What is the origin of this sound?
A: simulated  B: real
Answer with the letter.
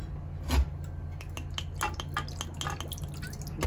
B